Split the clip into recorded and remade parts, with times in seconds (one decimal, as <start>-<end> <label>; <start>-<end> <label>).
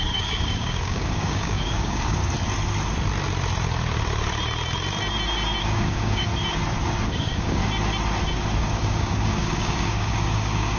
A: 0.0-2.2 remade; 2.2-5.6 recorded; 5.6-6.3 remade; 6.3-7.1 recorded; 7.1-7.6 remade; 7.6-8.6 recorded; 8.6-10.8 remade